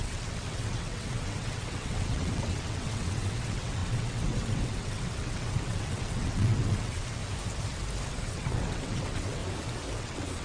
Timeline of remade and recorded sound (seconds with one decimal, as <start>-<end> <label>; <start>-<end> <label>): 0.0-7.2 remade; 7.2-8.1 recorded; 8.1-9.4 remade; 9.4-10.0 recorded; 10.0-10.4 remade